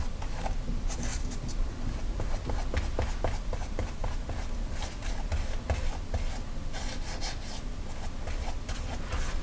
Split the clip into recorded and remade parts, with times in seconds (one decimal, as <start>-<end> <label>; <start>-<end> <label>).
0.0-1.1 recorded; 1.1-2.5 remade; 2.5-9.4 recorded